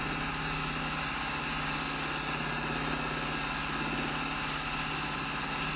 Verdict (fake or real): real